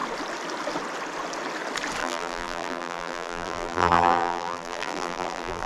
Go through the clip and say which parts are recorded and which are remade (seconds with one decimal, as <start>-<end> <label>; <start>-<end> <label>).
0.0-2.0 recorded; 2.0-5.7 remade